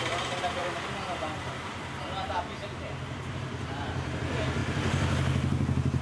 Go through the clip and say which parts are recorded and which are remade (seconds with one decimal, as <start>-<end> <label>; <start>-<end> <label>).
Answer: 0.0-0.6 remade; 0.6-3.3 recorded; 3.3-4.6 remade; 4.6-6.0 recorded